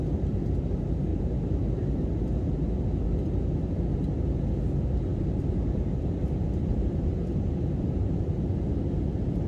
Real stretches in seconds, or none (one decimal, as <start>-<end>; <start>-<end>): 0.0-1.1; 2.5-5.1; 8.2-9.5